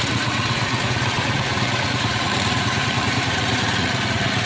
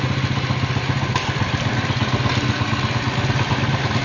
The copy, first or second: first